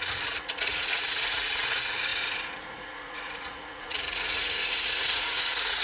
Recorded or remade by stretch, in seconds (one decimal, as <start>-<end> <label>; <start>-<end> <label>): 0.0-5.8 remade